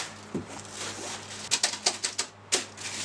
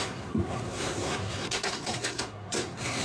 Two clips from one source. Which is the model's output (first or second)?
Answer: second